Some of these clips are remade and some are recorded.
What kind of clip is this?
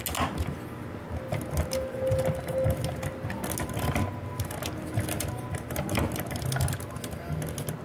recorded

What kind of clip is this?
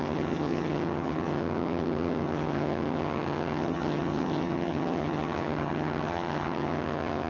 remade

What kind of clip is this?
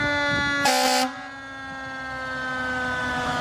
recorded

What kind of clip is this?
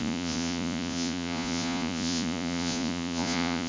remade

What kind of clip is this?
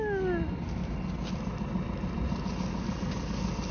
recorded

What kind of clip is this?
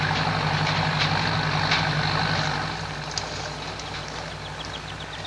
recorded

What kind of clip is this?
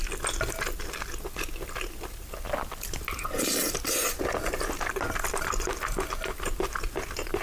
recorded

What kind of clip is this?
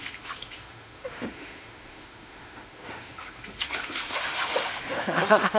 remade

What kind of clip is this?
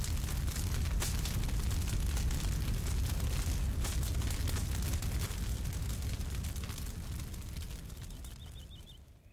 recorded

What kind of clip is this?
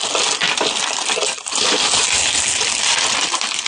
recorded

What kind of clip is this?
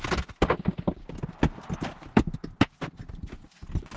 recorded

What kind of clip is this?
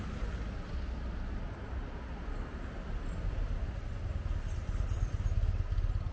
recorded